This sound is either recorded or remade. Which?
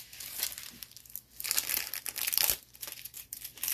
recorded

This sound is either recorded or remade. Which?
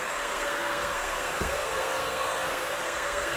remade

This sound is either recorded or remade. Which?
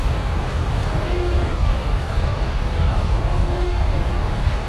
remade